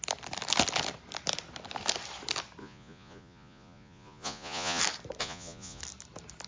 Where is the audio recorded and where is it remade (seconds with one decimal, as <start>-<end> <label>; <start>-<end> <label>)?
0.0-2.6 recorded; 2.6-4.8 remade; 4.8-5.2 recorded; 5.2-5.8 remade; 5.8-6.5 recorded